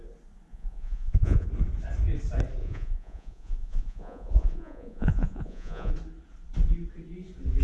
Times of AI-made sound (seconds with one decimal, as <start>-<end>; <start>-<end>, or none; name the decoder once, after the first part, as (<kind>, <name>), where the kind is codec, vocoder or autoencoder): 0.5-1.5 (vocoder, Vocos); 2.6-5.9